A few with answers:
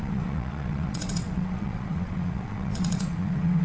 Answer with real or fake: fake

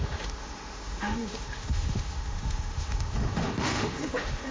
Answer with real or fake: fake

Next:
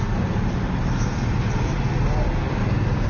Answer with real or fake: real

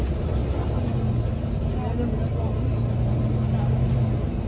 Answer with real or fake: real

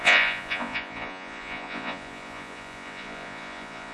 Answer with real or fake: fake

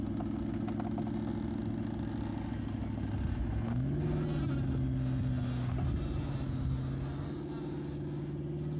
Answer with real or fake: real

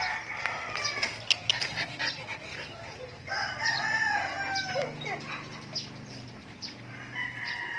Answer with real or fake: real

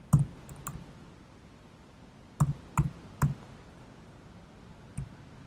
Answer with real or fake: real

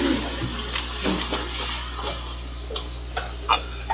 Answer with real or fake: real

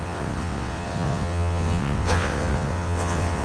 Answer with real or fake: fake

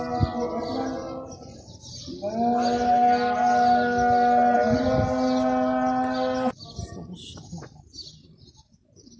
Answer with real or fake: real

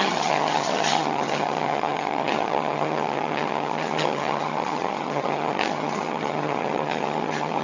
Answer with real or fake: fake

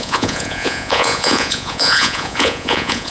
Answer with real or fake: fake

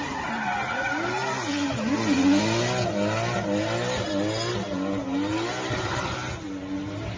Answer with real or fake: real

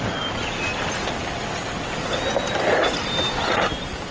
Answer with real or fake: real